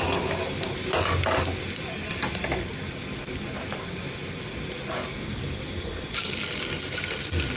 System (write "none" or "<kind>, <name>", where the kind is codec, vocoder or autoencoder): none